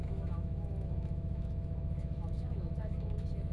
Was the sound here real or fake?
fake